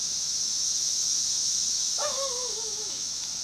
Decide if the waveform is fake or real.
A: fake